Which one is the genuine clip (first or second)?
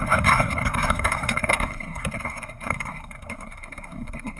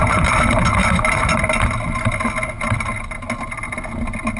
second